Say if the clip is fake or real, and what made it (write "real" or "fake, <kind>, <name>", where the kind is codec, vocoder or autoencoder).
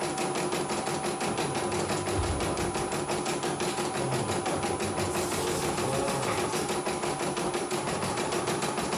real